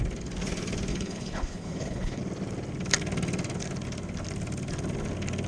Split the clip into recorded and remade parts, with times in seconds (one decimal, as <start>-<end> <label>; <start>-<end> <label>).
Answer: 0.0-0.9 recorded; 0.9-2.2 remade; 2.2-5.5 recorded